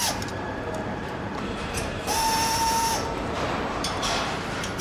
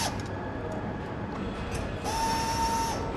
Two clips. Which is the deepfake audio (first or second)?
first